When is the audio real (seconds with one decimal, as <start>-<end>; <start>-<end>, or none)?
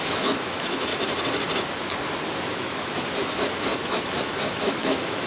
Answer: 0.9-2.5